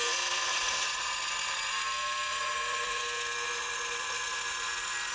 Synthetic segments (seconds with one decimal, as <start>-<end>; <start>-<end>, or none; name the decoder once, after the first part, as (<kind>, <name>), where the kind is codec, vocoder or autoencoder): 0.5-1.1 (vocoder, Vocos); 2.3-3.0